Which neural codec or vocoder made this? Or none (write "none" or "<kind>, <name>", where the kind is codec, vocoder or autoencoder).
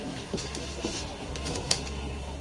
codec, SNAC